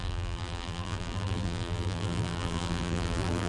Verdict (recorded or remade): remade